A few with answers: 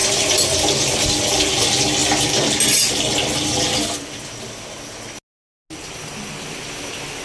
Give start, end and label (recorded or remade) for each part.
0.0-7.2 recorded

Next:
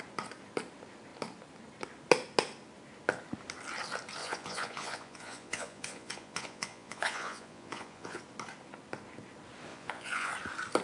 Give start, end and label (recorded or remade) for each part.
0.0-4.2 recorded; 4.2-8.2 remade; 8.2-9.7 recorded; 9.7-10.3 remade; 10.3-10.8 recorded